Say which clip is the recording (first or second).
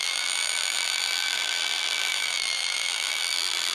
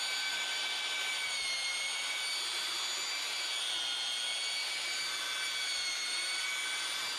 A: second